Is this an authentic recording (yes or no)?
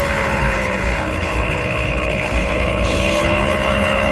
no